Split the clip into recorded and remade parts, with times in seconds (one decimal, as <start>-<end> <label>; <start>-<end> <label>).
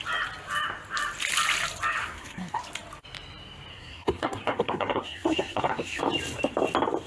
0.0-2.0 recorded; 2.0-2.6 remade; 2.6-3.7 recorded; 3.7-6.0 remade; 6.0-7.1 recorded